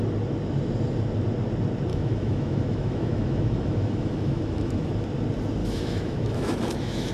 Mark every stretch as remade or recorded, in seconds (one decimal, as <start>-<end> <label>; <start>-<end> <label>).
0.0-1.9 recorded; 1.9-4.9 remade; 4.9-5.6 recorded; 5.6-7.1 remade